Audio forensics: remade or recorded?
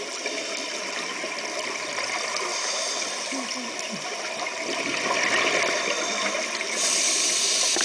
recorded